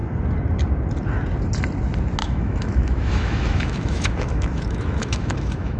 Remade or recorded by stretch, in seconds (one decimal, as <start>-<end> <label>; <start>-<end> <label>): 0.0-2.2 recorded; 2.2-5.8 remade